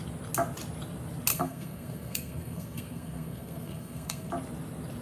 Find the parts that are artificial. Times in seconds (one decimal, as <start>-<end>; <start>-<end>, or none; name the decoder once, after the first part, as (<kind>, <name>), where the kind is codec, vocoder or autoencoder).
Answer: 1.3-4.3 (codec, SNAC)